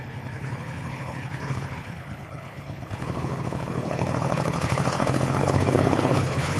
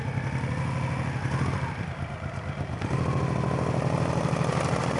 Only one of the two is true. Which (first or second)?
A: second